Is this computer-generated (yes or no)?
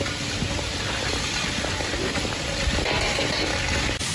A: no